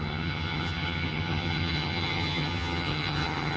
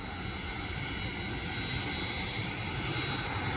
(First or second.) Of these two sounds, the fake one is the first